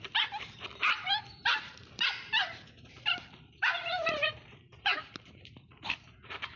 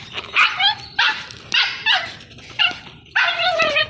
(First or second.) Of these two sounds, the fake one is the first